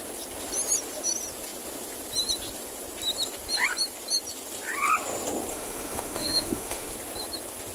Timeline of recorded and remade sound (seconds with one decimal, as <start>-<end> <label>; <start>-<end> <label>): 0.0-5.5 recorded; 5.5-6.9 remade; 6.9-7.7 recorded